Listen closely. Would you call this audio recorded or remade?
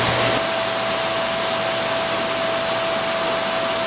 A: recorded